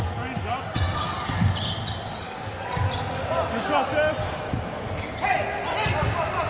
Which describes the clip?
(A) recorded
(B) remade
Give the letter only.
A